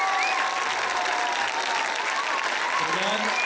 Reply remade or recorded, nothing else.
recorded